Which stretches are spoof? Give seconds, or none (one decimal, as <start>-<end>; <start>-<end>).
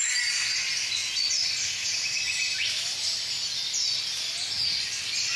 none